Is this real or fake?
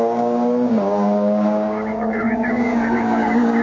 fake